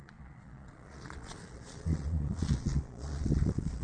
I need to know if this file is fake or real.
fake